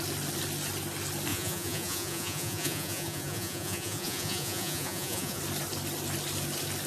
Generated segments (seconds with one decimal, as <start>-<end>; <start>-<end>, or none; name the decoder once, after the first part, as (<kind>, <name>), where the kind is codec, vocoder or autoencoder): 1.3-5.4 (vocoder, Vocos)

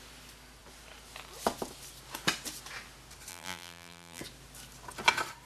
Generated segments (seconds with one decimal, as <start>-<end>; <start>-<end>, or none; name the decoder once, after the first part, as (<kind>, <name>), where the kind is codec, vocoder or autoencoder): 3.3-4.2 (vocoder, BigVGAN v2)

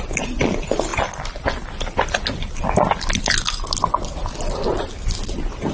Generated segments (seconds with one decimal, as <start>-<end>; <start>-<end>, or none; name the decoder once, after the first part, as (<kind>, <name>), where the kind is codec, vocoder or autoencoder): none